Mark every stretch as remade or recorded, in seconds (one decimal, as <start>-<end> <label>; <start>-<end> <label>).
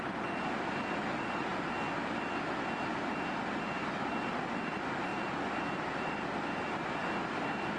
0.0-7.8 recorded